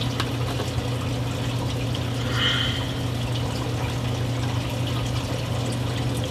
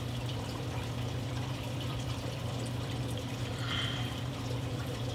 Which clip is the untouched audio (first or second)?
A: first